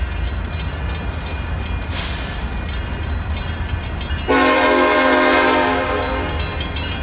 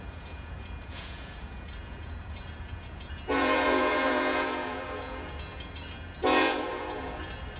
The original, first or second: first